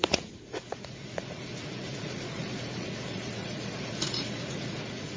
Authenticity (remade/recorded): remade